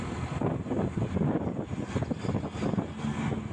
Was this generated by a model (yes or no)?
no